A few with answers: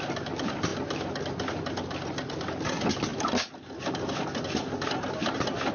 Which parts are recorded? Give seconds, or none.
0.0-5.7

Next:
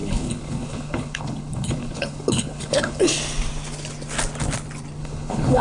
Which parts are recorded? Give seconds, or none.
3.2-5.0

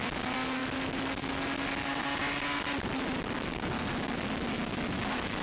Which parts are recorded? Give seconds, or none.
0.0-5.4

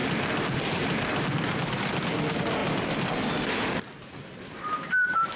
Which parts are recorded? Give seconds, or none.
0.0-5.4

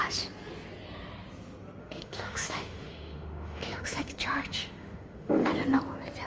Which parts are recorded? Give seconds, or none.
0.0-1.8; 5.5-6.3

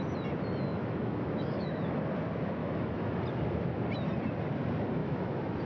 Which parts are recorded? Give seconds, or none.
0.0-0.7; 2.0-2.6; 3.1-5.0

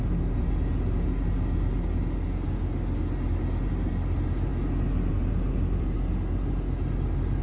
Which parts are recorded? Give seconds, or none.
0.0-7.4

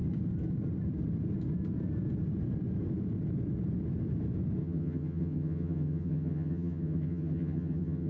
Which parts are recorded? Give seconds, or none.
0.0-4.6